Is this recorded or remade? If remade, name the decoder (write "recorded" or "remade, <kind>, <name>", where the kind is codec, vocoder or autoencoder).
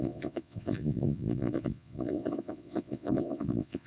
remade, vocoder, Vocos